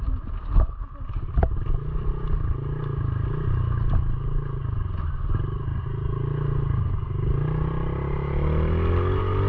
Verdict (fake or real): real